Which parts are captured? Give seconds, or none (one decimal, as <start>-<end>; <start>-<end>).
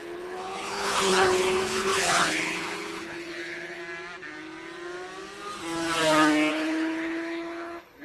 3.8-6.5